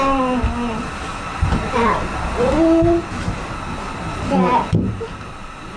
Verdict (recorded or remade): recorded